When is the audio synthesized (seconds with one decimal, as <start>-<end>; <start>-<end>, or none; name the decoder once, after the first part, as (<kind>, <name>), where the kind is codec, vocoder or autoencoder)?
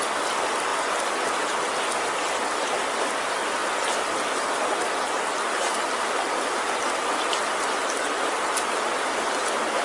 0.0-0.7 (vocoder, BigVGAN v2); 1.9-9.8